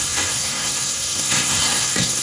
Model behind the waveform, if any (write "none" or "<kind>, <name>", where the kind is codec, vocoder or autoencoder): codec, SNAC